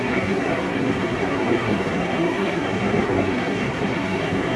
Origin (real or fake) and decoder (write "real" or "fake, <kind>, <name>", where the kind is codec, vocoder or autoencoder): fake, codec, SNAC